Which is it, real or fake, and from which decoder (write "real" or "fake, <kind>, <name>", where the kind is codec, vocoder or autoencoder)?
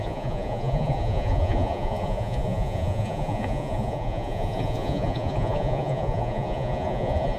fake, vocoder, Vocos